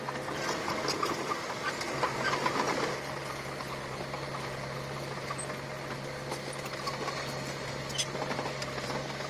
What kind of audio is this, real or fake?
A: real